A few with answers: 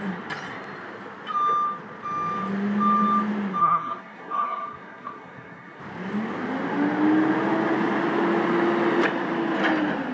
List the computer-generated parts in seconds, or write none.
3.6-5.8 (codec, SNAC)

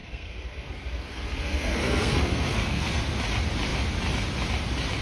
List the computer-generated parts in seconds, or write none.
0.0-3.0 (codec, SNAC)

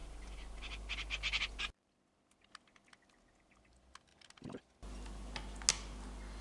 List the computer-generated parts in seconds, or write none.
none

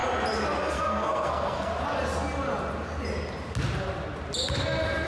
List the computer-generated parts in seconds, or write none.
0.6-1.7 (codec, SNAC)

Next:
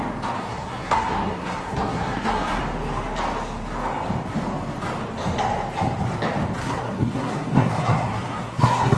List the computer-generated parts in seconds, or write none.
0.4-2.6 (codec, SNAC); 6.6-9.0